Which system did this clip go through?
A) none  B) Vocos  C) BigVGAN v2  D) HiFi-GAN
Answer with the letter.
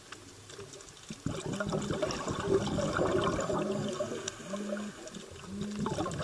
A